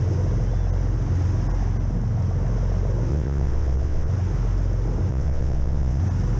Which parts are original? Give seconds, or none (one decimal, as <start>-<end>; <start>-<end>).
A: 0.0-3.1; 4.1-5.1; 6.0-6.4